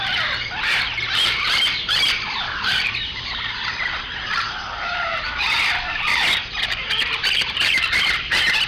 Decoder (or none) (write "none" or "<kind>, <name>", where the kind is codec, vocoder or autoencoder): vocoder, BigVGAN v2